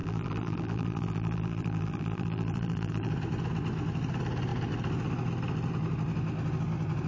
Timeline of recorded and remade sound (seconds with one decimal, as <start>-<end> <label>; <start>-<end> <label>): 0.0-3.1 remade; 3.1-7.1 recorded